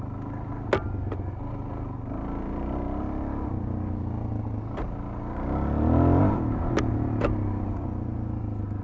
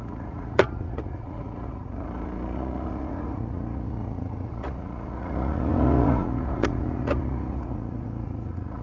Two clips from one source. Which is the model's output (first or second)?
second